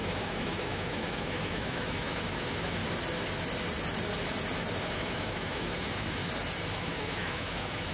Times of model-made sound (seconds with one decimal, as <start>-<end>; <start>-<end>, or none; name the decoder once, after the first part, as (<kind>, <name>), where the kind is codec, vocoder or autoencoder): 0.0-2.8 (autoencoder, DAC-VAE); 4.9-6.2; 6.7-7.9